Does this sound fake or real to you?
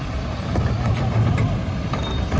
real